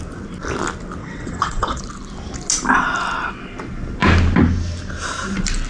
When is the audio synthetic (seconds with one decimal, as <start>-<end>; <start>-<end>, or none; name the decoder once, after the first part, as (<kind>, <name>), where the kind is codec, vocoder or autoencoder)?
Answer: 1.0-1.8 (vocoder, WaveNeXt)